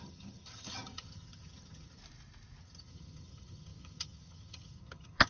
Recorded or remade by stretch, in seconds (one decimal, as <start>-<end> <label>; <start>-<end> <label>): 0.0-2.0 remade; 2.0-2.6 recorded; 2.6-5.3 remade